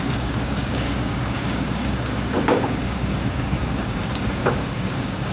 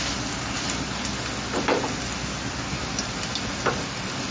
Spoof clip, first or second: first